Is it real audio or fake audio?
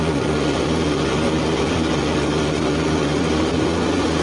fake